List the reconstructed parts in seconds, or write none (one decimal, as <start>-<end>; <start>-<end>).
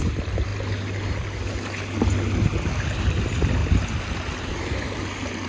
none